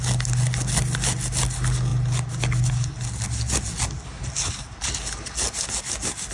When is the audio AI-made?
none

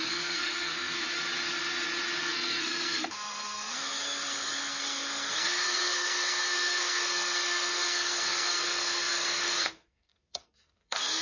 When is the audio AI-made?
0.0-1.0; 2.2-11.2

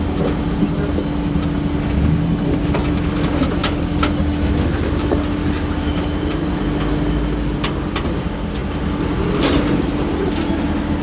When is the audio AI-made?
none